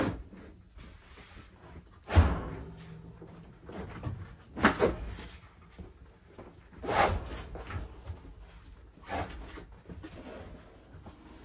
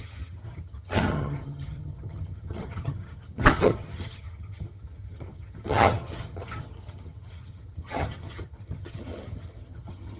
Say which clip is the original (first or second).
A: first